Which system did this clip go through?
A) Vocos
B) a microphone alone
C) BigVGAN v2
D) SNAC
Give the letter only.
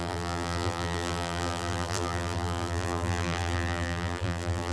C